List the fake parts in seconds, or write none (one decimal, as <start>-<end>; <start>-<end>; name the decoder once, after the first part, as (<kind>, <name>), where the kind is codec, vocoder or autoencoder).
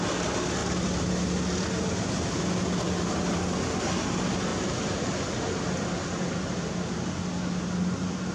none